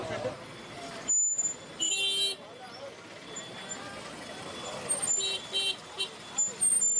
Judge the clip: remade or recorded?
recorded